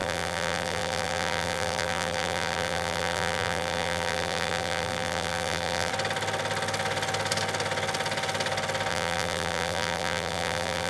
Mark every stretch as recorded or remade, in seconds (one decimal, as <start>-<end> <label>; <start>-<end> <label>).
0.0-5.9 remade; 5.9-8.9 recorded; 8.9-10.9 remade